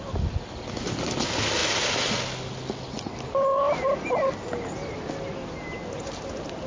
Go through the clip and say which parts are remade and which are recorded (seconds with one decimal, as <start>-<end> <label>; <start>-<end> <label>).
0.0-6.7 recorded